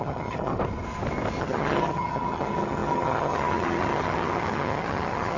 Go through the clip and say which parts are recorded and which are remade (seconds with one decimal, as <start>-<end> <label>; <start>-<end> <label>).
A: 0.0-0.5 remade; 0.5-1.4 recorded; 1.4-5.4 remade